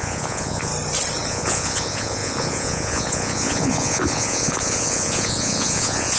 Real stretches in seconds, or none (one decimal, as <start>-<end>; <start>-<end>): 0.7-1.3